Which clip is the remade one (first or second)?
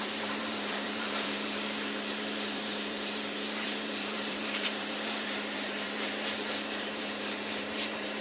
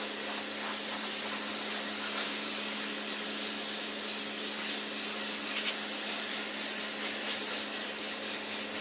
first